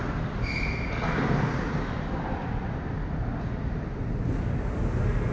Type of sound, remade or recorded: recorded